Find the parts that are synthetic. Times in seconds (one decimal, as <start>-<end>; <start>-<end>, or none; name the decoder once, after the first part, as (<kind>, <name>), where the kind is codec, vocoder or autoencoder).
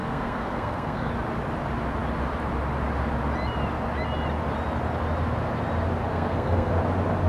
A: 0.0-1.1 (codec, SNAC); 6.1-6.7